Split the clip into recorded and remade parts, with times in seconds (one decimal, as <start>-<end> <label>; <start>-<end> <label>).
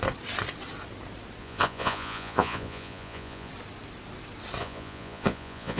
0.0-1.4 recorded; 1.4-3.5 remade; 3.5-4.6 recorded; 4.6-5.8 remade